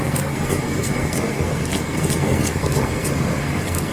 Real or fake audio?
fake